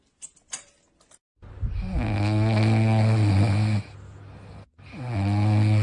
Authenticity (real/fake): real